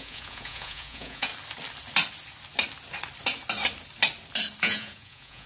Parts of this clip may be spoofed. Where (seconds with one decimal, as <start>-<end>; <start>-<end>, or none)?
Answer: 0.0-1.3; 4.6-5.5